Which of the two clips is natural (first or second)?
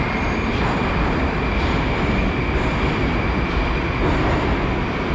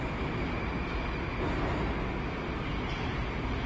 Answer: second